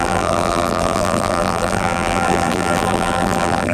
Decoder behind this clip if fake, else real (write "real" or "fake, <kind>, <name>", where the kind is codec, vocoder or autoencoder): fake, vocoder, BigVGAN v2